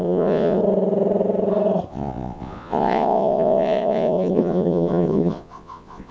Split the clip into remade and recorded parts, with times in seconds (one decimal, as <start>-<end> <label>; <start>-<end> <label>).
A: 0.0-0.6 remade; 0.6-1.9 recorded; 1.9-6.1 remade